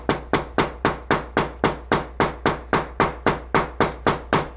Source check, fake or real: real